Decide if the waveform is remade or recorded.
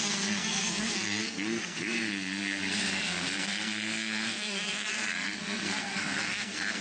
remade